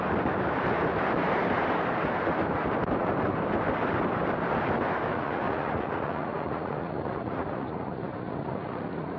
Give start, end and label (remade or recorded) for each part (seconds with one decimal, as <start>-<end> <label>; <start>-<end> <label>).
0.0-5.1 recorded; 5.1-9.2 remade